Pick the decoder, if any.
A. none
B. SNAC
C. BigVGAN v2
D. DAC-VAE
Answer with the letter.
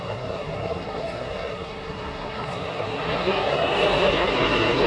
B